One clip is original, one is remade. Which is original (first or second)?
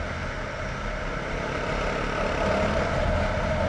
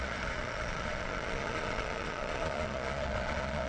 first